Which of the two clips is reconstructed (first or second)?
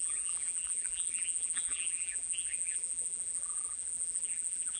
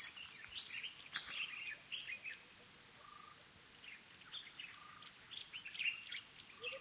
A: first